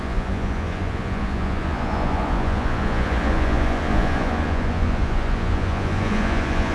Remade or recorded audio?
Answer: remade